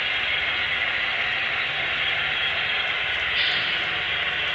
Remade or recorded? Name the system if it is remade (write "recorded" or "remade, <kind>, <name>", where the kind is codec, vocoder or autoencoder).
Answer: recorded